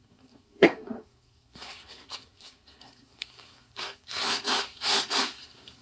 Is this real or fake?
fake